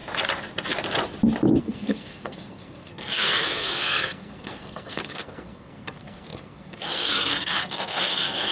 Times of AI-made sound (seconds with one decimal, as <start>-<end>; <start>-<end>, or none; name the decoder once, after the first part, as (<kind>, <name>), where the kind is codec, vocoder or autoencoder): 1.6-8.5 (codec, SNAC)